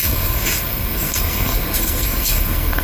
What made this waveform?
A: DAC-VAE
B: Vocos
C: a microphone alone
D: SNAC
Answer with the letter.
D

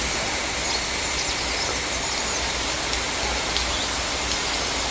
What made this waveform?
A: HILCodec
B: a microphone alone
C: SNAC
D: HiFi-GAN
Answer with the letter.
B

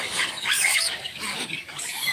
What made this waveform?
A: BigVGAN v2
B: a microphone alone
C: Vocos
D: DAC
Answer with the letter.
D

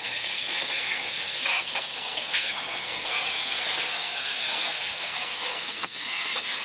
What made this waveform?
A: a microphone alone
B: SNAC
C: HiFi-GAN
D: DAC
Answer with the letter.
B